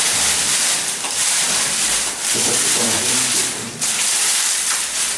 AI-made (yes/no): yes